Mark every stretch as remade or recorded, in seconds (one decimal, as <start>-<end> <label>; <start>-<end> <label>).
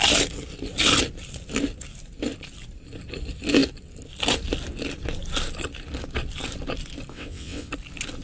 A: 0.0-7.1 recorded; 7.1-7.7 remade; 7.7-8.2 recorded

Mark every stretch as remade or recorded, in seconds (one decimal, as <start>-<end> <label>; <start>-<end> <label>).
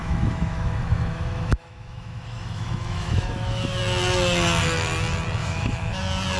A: 0.0-3.8 remade; 3.8-5.4 recorded; 5.4-6.0 remade; 6.0-6.4 recorded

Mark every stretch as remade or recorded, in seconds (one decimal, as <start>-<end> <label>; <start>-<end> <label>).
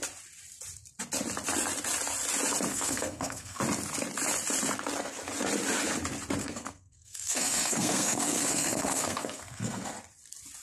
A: 0.0-2.7 recorded; 2.7-3.6 remade; 3.6-6.4 recorded; 6.4-9.9 remade; 9.9-10.6 recorded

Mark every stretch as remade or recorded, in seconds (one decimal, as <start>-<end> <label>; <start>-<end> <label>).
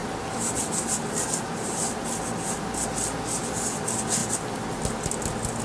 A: 0.0-5.6 recorded